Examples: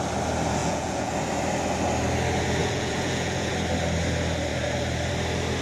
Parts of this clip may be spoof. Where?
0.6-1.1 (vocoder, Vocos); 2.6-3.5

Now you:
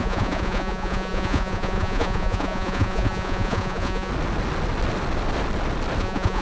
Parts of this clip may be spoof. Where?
0.0-4.1 (vocoder, Vocos); 6.0-6.4

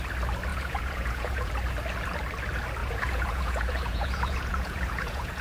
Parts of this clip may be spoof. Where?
0.5-1.5 (vocoder, Vocos); 2.8-5.4

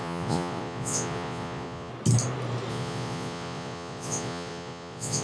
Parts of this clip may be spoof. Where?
0.0-1.9 (vocoder, Vocos); 2.7-5.2